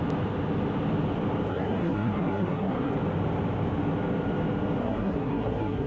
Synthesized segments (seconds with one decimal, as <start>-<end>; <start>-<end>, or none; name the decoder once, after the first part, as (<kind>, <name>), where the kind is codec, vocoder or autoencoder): 1.5-2.9 (codec, SNAC); 4.8-5.9